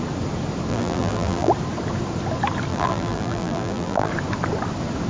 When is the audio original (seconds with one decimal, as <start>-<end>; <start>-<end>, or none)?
0.0-0.7; 1.5-2.7; 4.1-5.1